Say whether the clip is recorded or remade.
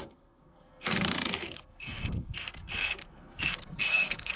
remade